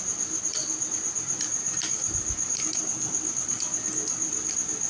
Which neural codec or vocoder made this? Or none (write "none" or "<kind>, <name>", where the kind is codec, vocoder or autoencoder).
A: vocoder, BigVGAN v2